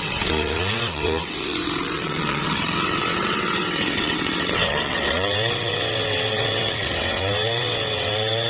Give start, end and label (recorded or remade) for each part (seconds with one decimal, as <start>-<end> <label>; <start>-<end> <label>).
0.0-8.5 remade